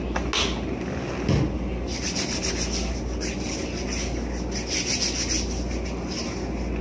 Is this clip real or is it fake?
real